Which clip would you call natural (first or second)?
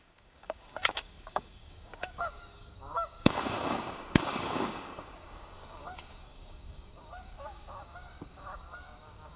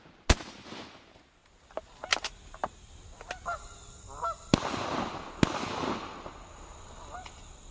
second